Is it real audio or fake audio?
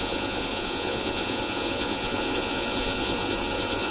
fake